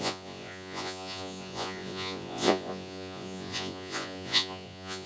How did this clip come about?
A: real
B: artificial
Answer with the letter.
B